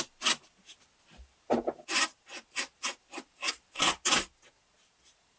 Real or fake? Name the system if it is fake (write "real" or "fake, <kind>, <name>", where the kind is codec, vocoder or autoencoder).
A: real